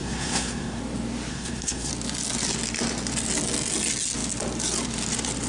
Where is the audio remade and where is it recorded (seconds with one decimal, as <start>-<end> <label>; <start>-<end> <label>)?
0.0-0.8 remade; 0.8-1.3 recorded; 1.3-1.9 remade; 1.9-5.5 recorded

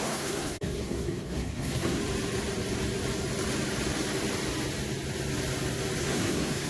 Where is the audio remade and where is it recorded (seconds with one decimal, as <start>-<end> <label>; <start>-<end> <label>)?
0.0-2.0 remade; 2.0-6.0 recorded; 6.0-6.7 remade

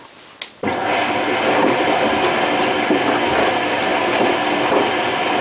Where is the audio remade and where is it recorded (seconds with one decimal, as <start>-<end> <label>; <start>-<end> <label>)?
0.0-5.4 recorded

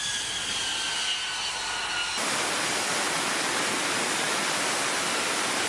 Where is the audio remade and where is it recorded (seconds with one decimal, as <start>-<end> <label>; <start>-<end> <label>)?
0.0-5.7 recorded

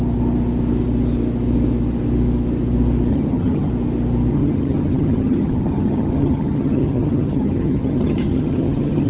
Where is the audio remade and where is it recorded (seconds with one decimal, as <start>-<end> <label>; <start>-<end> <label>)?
0.0-3.1 recorded; 3.1-3.7 remade; 3.7-4.3 recorded; 4.3-9.1 remade

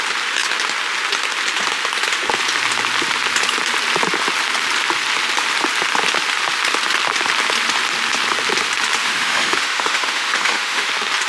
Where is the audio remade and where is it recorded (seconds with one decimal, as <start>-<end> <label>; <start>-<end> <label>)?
0.0-9.0 recorded; 9.0-10.9 remade; 10.9-11.3 recorded